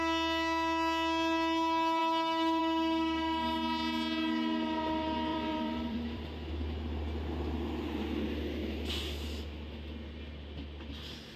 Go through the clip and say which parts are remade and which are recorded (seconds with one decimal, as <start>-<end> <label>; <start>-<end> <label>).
0.0-5.3 recorded; 5.3-6.5 remade; 6.5-11.4 recorded